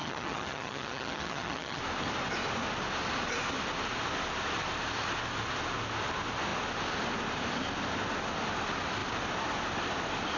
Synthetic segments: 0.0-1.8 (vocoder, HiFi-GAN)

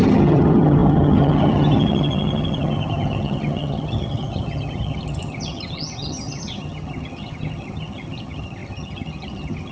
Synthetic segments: 0.0-9.7 (vocoder, HiFi-GAN)

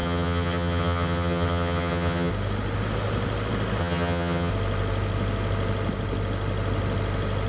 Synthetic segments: 0.0-2.3 (vocoder, HiFi-GAN); 3.8-4.5

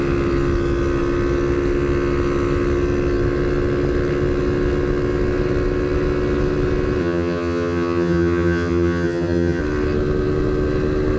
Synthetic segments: 7.0-9.6 (vocoder, HiFi-GAN)

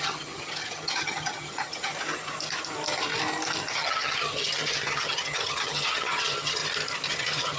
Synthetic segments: 0.0-1.9 (vocoder, HiFi-GAN); 3.7-6.6; 7.1-7.6